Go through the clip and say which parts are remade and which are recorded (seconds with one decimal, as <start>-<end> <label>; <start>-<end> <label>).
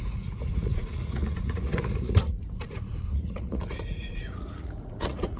0.0-5.4 remade